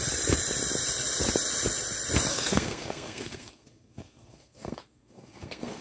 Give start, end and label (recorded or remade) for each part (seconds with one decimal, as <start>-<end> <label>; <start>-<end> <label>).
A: 0.0-2.3 recorded; 2.3-5.8 remade